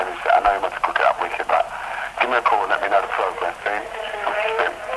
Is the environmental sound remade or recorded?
recorded